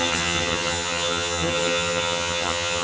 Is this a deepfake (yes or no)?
yes